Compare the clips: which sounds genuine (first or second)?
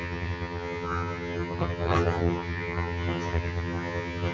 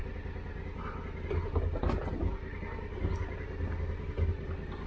second